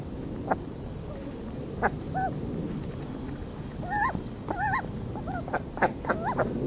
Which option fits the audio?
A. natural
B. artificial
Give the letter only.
A